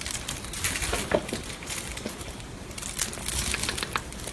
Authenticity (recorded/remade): recorded